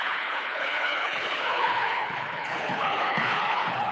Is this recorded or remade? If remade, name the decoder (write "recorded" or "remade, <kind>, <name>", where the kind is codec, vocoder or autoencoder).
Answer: remade, codec, HILCodec